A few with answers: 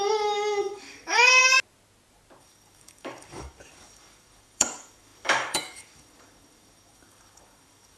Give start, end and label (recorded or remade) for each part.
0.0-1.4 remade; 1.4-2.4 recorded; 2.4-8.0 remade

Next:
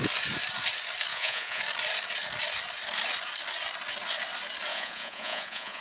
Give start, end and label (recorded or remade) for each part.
0.0-1.1 recorded; 1.1-1.6 remade; 1.6-4.7 recorded; 4.7-5.8 remade

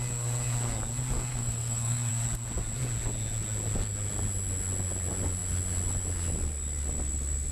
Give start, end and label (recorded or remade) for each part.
0.0-1.3 recorded; 1.3-2.1 remade; 2.1-7.5 recorded

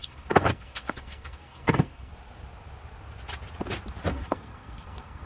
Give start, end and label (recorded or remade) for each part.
0.0-2.1 remade; 2.1-4.1 recorded; 4.1-5.3 remade

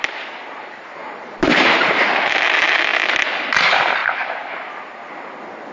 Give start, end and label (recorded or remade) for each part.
0.0-1.0 recorded; 1.0-2.3 remade; 2.3-4.0 recorded; 4.0-4.7 remade; 4.7-5.7 recorded

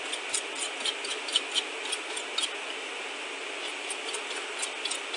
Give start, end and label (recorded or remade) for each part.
0.0-5.2 recorded

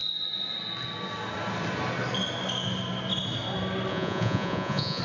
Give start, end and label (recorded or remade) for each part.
0.0-3.9 recorded; 3.9-5.0 remade

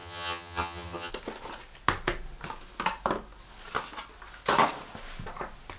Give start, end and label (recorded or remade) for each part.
0.0-1.1 remade; 1.1-5.8 recorded